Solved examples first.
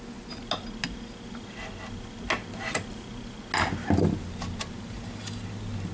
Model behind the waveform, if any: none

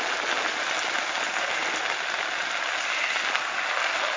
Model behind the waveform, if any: none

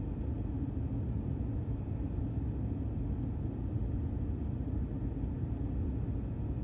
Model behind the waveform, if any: none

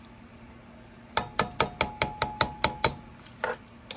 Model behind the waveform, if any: none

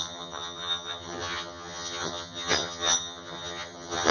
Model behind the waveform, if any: vocoder, HiFi-GAN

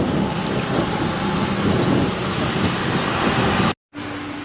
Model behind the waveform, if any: none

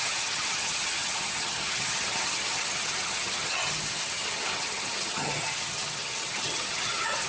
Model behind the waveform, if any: vocoder, HiFi-GAN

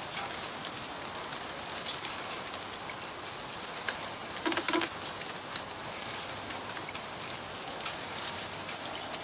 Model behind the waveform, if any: none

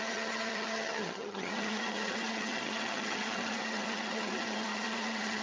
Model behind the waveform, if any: vocoder, HiFi-GAN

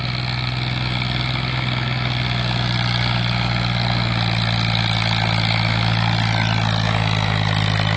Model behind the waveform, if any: none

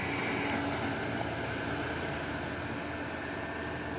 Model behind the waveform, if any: none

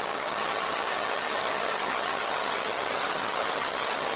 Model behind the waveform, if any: vocoder, HiFi-GAN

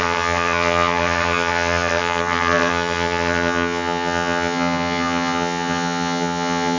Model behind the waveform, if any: vocoder, HiFi-GAN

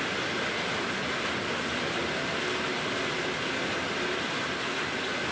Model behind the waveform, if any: none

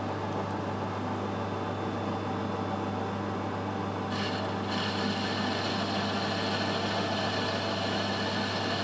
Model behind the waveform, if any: none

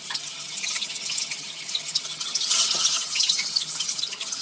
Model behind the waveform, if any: vocoder, HiFi-GAN